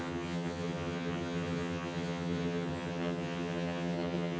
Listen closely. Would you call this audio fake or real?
fake